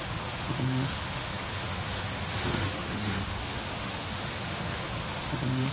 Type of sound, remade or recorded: remade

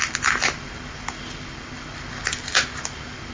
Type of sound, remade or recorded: recorded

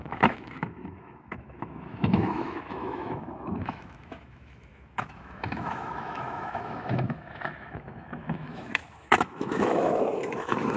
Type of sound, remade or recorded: remade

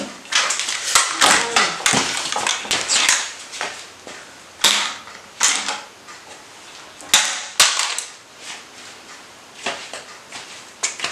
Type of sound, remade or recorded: recorded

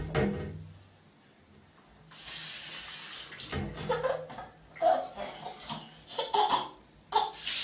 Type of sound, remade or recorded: recorded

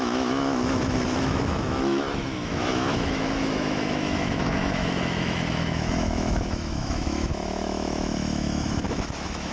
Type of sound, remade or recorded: remade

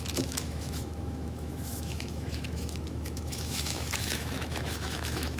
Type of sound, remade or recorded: remade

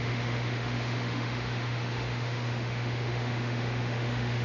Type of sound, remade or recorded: remade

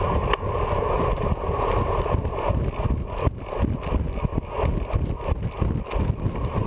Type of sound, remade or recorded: recorded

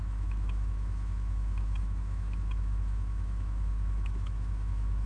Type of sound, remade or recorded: remade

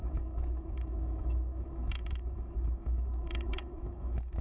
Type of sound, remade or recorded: remade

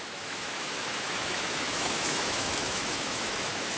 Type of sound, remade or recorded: remade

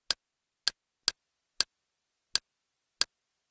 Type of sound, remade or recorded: recorded